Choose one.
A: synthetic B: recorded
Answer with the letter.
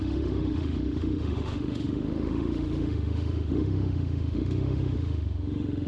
A